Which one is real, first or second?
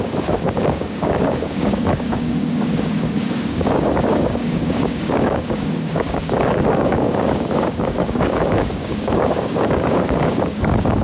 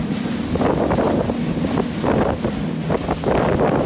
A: second